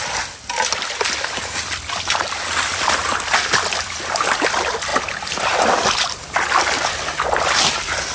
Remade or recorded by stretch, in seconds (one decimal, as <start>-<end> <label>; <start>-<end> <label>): 0.0-8.1 recorded